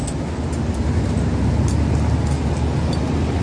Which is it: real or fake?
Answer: real